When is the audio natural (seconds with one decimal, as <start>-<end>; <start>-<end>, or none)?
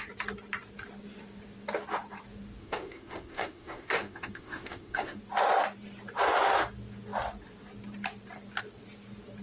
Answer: 0.0-2.6; 5.2-9.4